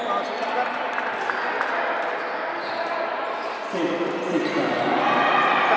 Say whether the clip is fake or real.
real